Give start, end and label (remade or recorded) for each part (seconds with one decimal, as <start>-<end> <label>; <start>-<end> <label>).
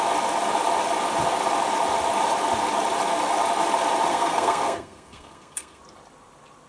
0.0-4.1 recorded; 4.1-5.8 remade; 5.8-6.7 recorded